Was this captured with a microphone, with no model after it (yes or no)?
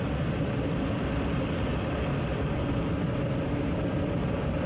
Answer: yes